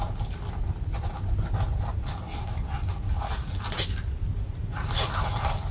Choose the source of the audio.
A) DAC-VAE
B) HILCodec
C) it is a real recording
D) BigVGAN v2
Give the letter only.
C